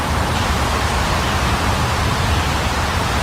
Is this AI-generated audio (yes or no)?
yes